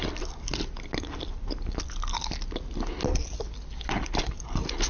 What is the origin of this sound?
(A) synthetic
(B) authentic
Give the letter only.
B